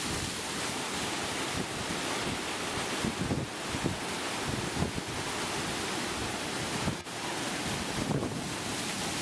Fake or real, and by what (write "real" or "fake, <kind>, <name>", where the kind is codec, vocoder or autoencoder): real